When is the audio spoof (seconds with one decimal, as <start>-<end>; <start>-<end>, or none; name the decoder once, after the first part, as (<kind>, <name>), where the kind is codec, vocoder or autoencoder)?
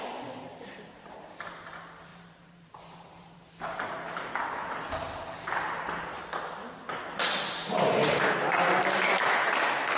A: 0.5-1.7 (vocoder, BigVGAN v2); 2.1-4.3